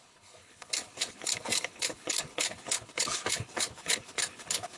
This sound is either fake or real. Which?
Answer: fake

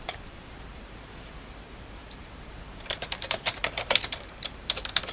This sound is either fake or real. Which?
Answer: fake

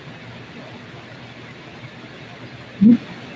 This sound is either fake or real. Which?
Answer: real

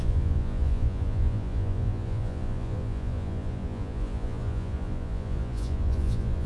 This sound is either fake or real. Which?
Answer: fake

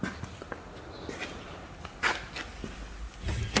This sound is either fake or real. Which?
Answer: real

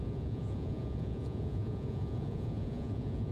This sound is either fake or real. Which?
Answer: fake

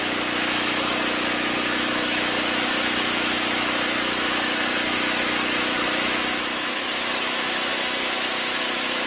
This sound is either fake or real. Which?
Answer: fake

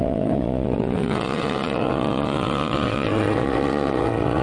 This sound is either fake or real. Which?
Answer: fake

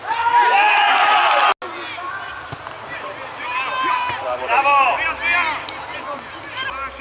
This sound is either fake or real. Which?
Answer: real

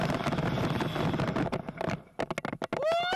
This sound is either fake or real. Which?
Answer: real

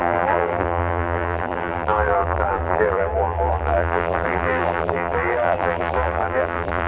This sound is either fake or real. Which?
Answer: fake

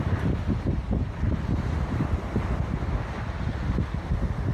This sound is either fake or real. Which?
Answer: real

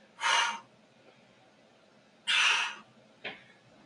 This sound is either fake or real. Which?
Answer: real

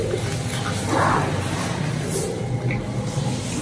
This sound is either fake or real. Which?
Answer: real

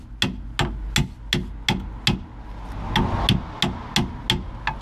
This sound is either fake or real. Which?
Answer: real